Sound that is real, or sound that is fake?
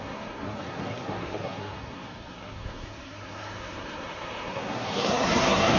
fake